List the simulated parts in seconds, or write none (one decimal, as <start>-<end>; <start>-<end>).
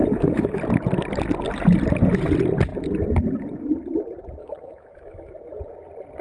0.0-0.6; 4.4-5.3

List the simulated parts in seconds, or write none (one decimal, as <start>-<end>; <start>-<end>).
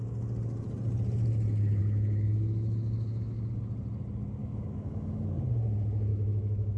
1.8-3.5; 4.4-5.2; 6.1-6.8